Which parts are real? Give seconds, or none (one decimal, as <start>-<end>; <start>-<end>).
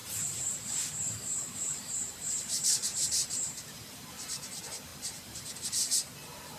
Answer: none